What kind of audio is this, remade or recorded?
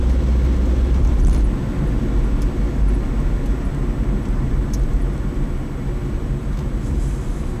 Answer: recorded